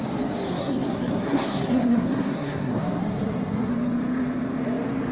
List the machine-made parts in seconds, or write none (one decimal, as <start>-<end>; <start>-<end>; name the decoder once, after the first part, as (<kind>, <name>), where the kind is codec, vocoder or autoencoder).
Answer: 0.6-3.7 (codec, SNAC)